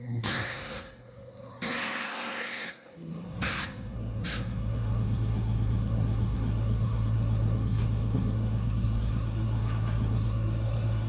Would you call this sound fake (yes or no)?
yes